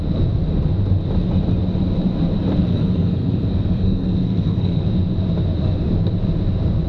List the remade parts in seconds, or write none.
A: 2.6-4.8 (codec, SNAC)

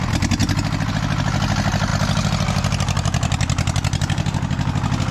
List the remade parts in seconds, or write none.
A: none

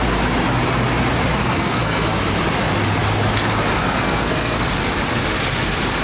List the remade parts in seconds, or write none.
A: 1.4-2.1 (codec, SNAC); 3.8-4.6